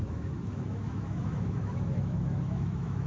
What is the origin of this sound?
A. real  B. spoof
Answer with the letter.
B